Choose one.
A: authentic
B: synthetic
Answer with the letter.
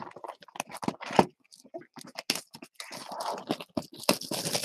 A